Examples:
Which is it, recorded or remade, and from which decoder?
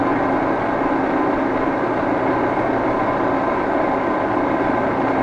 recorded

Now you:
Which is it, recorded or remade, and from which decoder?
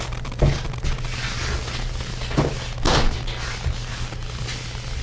recorded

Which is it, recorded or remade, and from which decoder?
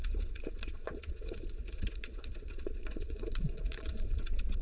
remade, vocoder, Vocos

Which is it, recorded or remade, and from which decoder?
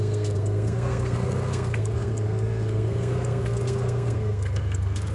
remade, codec, SNAC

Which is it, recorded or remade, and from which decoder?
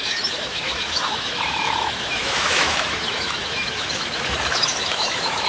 remade, autoencoder, DAC-VAE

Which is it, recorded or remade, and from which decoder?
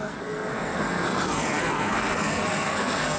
remade, codec, SNAC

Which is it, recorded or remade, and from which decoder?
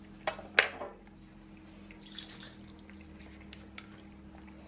recorded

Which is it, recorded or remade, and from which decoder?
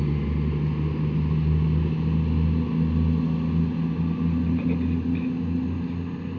recorded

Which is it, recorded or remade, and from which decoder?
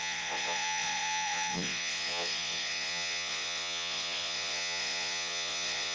remade, vocoder, Vocos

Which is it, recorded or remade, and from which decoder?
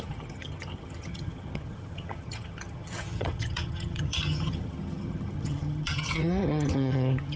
remade, vocoder, HiFi-GAN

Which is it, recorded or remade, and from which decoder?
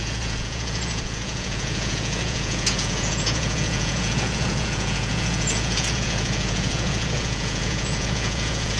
remade, vocoder, Vocos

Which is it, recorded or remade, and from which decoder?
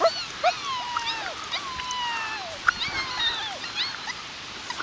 recorded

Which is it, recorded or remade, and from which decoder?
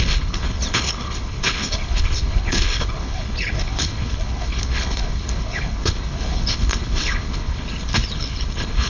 remade, codec, HILCodec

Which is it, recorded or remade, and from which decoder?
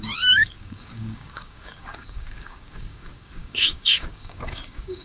remade, codec, DAC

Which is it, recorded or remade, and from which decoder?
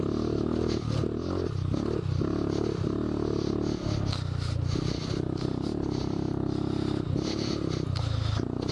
recorded